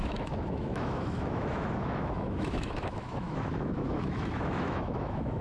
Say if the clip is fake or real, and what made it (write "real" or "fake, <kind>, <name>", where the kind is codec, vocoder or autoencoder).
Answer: fake, autoencoder, DAC-VAE